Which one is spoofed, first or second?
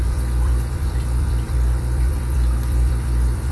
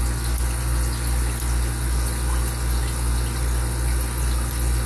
first